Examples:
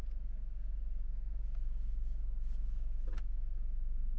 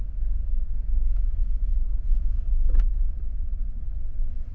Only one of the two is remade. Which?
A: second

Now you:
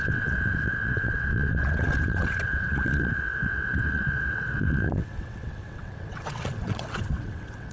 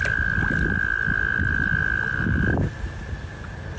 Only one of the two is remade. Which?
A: first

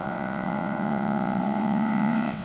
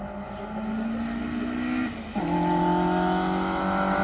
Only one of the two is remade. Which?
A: first